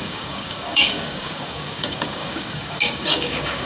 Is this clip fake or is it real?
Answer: fake